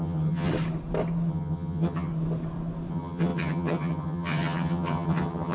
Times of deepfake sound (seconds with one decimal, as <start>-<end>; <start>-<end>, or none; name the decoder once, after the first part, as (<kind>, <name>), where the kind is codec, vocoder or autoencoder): 0.0-0.5 (vocoder, HiFi-GAN); 1.3-2.1; 2.9-5.5